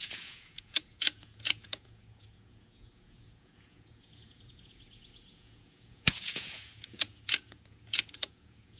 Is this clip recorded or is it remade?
remade